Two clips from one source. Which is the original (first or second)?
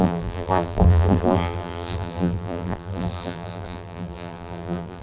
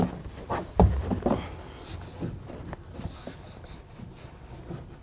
second